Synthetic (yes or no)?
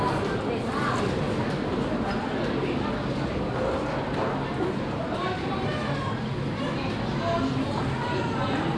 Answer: no